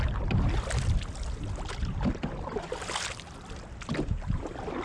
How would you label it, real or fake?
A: real